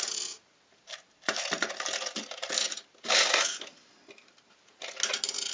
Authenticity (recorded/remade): recorded